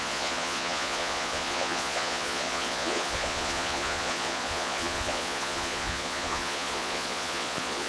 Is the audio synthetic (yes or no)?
yes